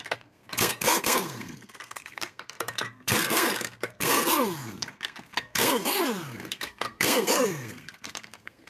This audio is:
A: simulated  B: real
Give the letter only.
A